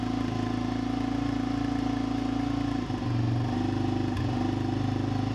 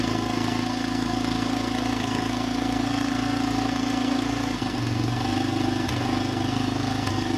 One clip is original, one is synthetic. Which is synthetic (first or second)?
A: second